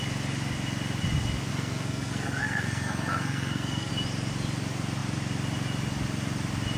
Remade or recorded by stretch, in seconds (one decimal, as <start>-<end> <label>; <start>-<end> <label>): 0.0-1.5 recorded; 1.5-3.9 remade; 3.9-6.8 recorded